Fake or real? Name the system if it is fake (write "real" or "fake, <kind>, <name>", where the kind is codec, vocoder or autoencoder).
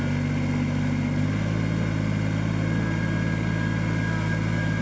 real